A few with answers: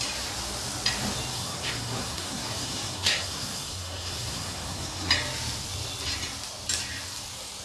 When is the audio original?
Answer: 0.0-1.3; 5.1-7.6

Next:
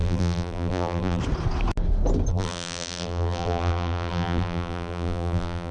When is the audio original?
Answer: 1.2-2.3

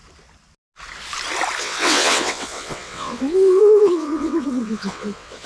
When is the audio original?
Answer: 0.0-1.6